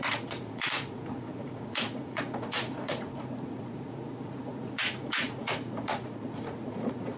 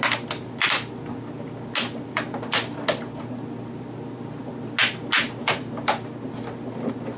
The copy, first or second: first